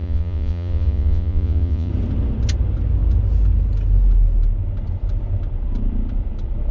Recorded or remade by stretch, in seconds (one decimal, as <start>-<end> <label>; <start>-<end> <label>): 0.0-1.9 remade; 1.9-6.7 recorded